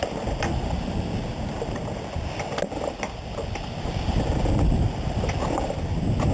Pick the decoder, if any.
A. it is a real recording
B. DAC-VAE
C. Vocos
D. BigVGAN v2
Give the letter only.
A